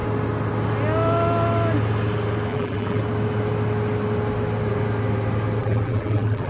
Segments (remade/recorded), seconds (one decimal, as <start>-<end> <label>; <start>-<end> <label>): 0.0-2.5 recorded; 2.5-3.0 remade; 3.0-5.6 recorded; 5.6-6.5 remade